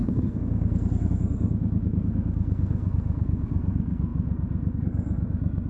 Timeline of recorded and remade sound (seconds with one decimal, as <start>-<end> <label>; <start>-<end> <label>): 0.0-5.7 remade